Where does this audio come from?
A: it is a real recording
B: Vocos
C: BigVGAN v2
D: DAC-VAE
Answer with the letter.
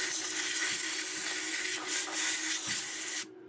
A